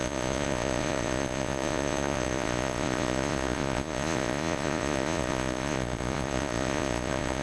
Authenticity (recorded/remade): remade